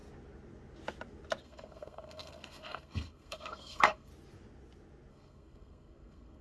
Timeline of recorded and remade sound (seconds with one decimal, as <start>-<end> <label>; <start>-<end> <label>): 0.0-1.4 recorded; 1.4-4.1 remade; 4.1-5.1 recorded; 5.1-6.4 remade